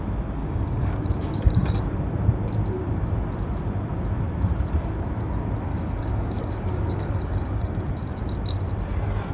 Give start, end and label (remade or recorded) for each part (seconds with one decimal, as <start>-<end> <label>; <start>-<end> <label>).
0.0-0.4 recorded; 0.4-1.7 remade; 1.7-5.7 recorded; 5.7-8.2 remade; 8.2-9.3 recorded